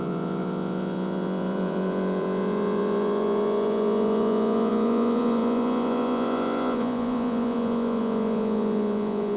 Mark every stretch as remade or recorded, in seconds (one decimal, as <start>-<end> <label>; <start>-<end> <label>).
0.0-9.4 remade